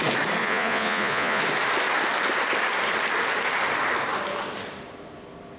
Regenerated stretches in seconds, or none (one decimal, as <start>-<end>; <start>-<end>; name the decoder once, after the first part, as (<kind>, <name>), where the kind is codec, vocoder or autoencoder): 0.4-1.4 (vocoder, Vocos)